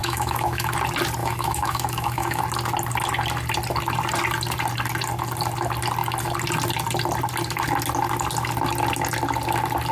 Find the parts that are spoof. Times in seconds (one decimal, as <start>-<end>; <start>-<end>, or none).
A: 0.0-0.7; 1.2-2.4

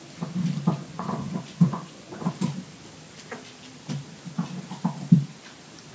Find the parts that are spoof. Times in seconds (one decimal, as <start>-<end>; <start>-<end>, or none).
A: 0.8-2.3

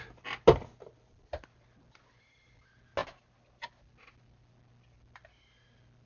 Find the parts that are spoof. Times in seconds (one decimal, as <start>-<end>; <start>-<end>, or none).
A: none

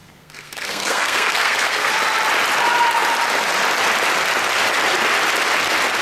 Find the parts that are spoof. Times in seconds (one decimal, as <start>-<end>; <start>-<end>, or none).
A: 0.0-1.9

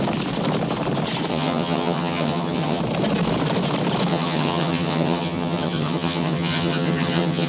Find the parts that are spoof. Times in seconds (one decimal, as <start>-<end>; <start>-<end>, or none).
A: 1.3-2.8; 4.1-7.5